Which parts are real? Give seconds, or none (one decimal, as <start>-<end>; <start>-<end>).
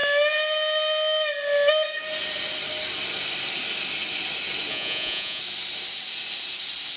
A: 0.0-4.7; 5.4-7.0